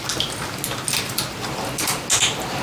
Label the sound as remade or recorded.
recorded